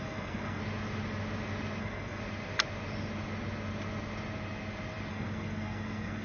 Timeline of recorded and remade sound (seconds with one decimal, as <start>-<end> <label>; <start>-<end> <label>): 0.0-0.6 remade; 0.6-1.8 recorded; 1.8-2.2 remade; 2.2-5.1 recorded; 5.1-6.2 remade